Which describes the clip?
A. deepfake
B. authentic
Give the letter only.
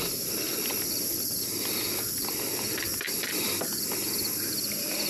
B